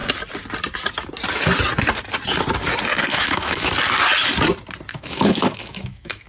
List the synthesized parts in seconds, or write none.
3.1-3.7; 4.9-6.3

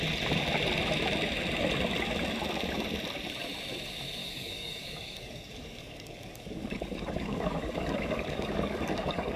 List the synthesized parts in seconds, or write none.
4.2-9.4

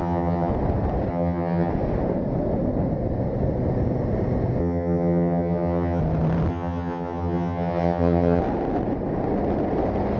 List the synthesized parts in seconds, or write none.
0.0-0.5; 1.1-1.7; 4.6-6.0; 6.5-8.4

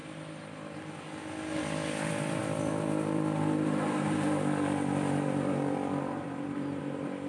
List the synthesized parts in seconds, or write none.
1.6-7.3